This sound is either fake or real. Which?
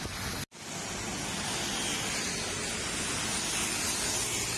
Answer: real